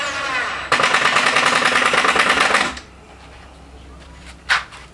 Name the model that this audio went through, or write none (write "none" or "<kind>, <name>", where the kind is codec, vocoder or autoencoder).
none